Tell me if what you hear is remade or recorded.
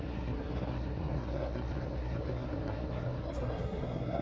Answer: remade